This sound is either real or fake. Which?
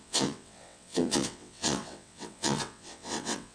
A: fake